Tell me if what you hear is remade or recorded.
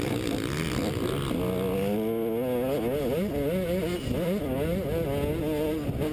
recorded